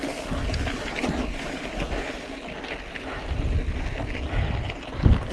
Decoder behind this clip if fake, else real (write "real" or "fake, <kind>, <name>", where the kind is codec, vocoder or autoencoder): real